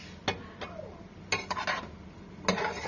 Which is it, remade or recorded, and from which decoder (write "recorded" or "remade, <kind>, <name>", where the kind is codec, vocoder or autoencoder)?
recorded